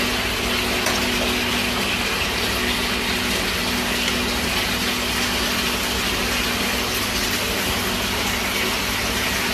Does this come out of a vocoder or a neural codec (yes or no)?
no